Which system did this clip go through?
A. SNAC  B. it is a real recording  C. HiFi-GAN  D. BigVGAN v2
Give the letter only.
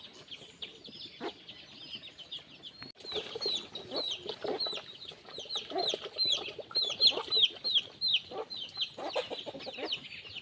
B